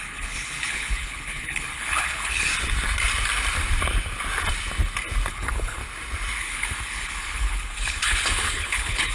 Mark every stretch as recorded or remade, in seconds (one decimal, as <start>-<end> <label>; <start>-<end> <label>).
0.0-2.5 remade; 2.5-5.3 recorded; 5.3-5.8 remade; 5.8-6.4 recorded; 6.4-9.1 remade